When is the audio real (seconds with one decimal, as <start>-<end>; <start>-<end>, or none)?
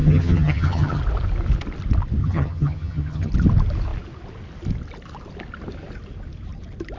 1.0-2.2; 3.3-7.0